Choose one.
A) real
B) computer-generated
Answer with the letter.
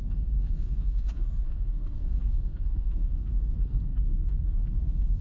B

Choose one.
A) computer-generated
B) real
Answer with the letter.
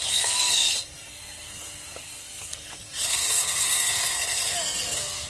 A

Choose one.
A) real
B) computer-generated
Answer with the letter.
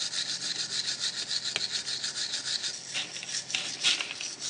A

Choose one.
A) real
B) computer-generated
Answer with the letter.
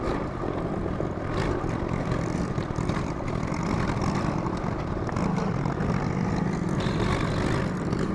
A